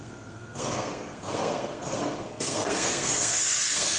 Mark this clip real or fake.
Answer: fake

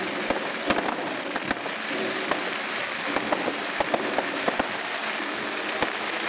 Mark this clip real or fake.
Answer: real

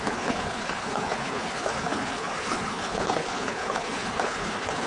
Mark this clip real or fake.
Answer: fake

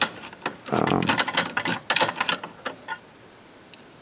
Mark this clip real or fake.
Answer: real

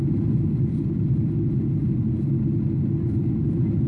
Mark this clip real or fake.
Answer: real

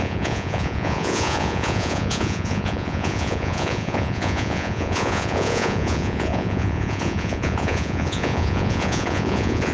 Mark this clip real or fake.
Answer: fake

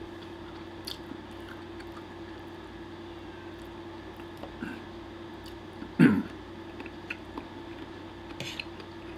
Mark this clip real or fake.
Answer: real